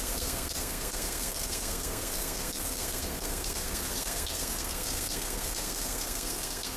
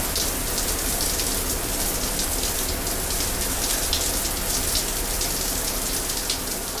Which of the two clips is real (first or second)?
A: second